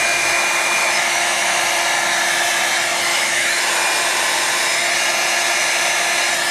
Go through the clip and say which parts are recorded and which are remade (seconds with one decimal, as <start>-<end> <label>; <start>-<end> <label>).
0.0-0.8 recorded; 0.8-1.6 remade; 1.6-3.1 recorded; 3.1-3.6 remade; 3.6-6.5 recorded